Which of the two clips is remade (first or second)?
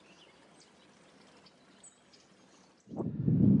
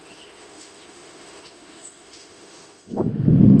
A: second